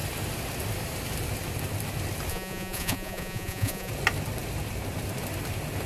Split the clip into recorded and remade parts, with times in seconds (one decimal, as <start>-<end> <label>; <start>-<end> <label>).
0.0-2.3 recorded; 2.3-3.9 remade; 3.9-5.9 recorded